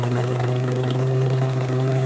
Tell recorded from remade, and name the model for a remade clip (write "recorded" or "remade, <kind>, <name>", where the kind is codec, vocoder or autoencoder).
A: remade, codec, SNAC